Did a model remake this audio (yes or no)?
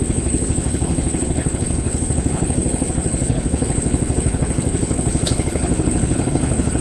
yes